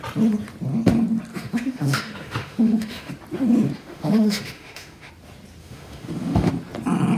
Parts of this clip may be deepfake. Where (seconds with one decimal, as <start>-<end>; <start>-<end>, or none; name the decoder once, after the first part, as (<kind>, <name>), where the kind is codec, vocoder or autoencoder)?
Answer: 1.3-3.1 (autoencoder, DAC-VAE); 3.8-5.1; 5.6-6.5